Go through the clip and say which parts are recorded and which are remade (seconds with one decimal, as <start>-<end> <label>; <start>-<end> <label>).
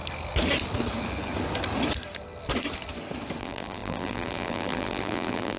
0.0-3.4 recorded; 3.4-5.6 remade